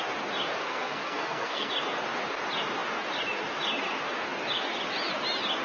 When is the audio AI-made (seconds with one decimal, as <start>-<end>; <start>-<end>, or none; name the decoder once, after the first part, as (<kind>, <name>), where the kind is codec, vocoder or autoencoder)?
0.6-1.7 (codec, SNAC)